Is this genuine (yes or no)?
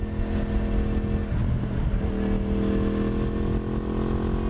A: yes